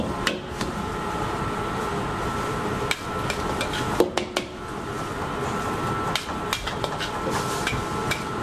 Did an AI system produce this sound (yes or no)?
no